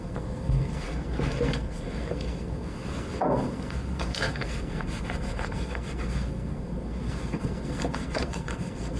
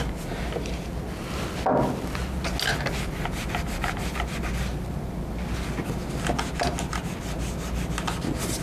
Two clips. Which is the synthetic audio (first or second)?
first